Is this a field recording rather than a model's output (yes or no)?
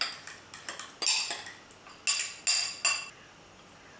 yes